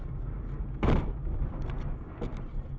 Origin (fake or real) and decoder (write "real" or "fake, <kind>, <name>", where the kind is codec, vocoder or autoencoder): real